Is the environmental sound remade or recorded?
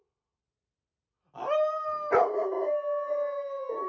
recorded